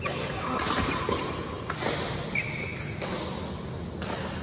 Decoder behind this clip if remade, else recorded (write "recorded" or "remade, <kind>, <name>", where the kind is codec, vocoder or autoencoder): recorded